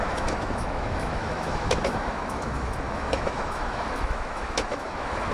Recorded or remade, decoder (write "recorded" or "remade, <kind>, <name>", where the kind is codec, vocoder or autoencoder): remade, autoencoder, DAC-VAE